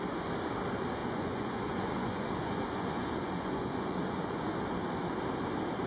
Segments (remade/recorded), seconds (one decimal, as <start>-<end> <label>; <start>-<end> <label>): 0.0-1.0 recorded; 1.0-4.5 remade; 4.5-5.9 recorded